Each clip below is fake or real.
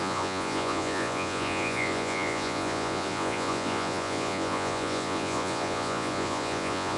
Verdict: fake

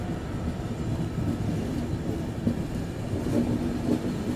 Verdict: real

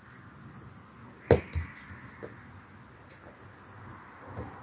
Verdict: real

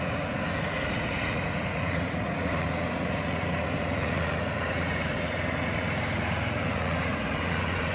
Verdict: fake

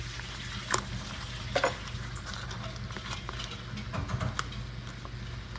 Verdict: real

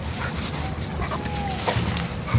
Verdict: real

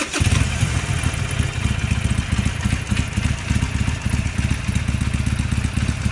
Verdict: real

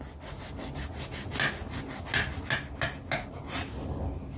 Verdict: real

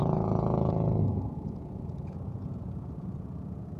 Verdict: fake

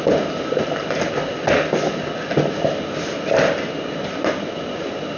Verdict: real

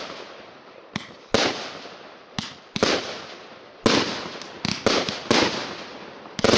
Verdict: real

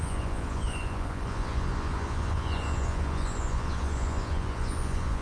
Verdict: fake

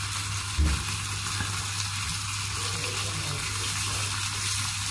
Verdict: real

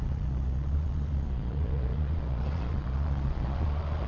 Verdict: fake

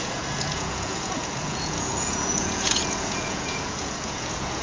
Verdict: fake